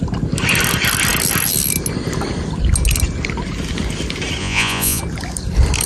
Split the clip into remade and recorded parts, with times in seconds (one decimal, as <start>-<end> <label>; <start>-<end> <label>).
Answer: 0.0-4.4 recorded; 4.4-5.0 remade; 5.0-5.9 recorded